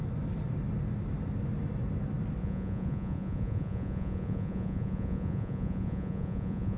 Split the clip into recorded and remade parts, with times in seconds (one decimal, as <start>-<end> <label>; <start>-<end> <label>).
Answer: 0.0-2.4 recorded; 2.4-6.8 remade